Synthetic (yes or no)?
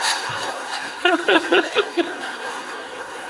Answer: yes